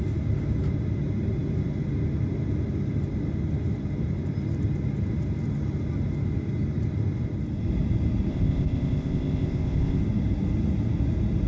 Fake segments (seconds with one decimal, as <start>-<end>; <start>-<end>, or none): 8.3-10.0